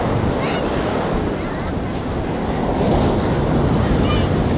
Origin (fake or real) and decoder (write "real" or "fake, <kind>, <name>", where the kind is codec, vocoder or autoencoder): real